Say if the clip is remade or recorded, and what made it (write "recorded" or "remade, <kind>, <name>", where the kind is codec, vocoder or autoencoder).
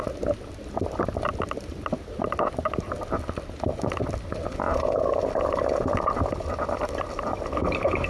recorded